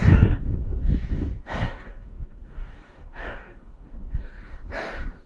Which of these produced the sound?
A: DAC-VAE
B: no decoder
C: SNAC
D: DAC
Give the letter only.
D